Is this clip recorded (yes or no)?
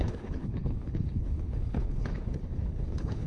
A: no